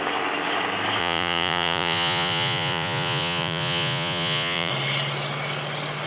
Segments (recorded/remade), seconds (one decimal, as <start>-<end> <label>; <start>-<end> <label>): 0.0-1.0 recorded; 1.0-4.7 remade; 4.7-6.1 recorded